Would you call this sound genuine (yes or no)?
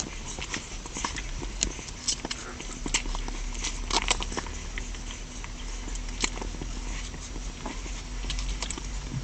yes